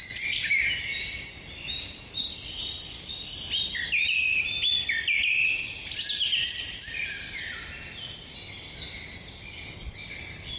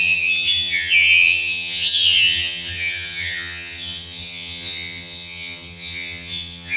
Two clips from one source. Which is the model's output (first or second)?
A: second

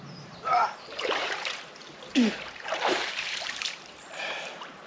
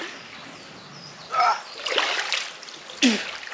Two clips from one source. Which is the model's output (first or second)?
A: first